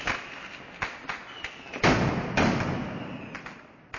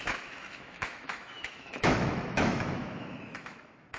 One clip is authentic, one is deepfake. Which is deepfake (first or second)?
second